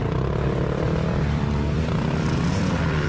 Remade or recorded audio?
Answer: remade